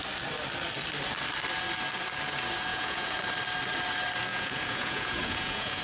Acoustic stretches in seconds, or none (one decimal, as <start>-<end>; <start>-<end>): 0.0-2.7; 3.2-4.3